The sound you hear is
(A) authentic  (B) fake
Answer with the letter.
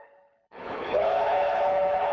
B